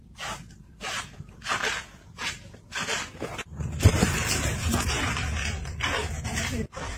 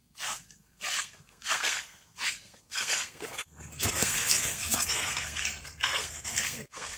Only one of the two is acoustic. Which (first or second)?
first